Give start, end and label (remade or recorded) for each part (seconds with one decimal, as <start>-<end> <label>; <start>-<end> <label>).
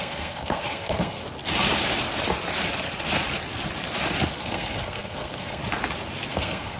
0.0-1.2 remade; 1.2-4.4 recorded; 4.4-5.6 remade; 5.6-6.3 recorded; 6.3-6.8 remade